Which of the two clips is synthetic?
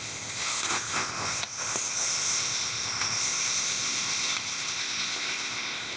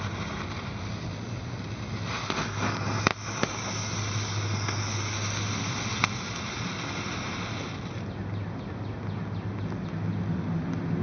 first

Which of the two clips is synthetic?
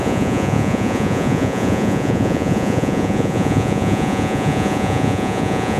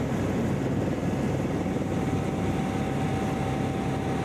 first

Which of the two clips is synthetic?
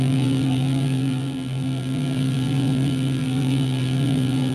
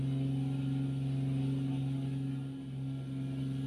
first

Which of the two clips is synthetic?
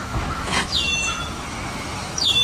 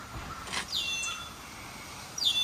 first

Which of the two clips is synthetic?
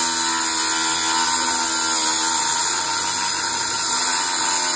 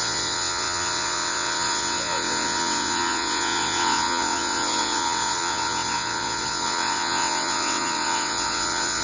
second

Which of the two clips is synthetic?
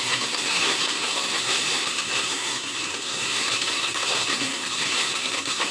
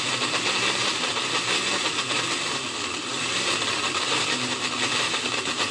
first